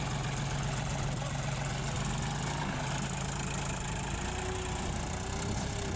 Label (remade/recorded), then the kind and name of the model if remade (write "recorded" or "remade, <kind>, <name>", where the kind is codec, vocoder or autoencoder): recorded